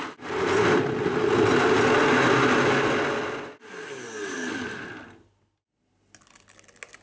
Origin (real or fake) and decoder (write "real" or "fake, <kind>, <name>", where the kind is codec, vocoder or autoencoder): real